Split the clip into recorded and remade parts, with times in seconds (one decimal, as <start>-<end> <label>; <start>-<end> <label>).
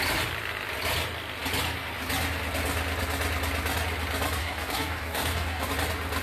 0.0-4.4 recorded; 4.4-5.7 remade; 5.7-6.2 recorded